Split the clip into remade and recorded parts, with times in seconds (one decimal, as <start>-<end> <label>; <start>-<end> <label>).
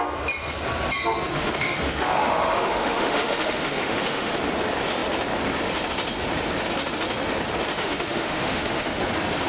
0.0-1.3 recorded; 1.3-4.4 remade; 4.4-7.8 recorded; 7.8-9.0 remade; 9.0-9.5 recorded